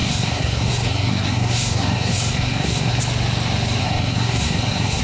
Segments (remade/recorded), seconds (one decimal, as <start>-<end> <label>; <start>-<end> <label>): 0.0-3.0 remade; 3.0-3.8 recorded; 3.8-5.0 remade